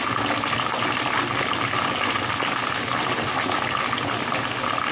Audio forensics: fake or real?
real